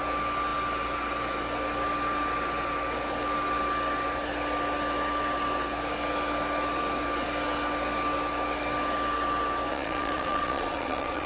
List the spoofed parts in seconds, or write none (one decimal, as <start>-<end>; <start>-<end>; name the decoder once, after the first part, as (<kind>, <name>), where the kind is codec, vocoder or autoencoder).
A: 9.7-11.3 (vocoder, Vocos)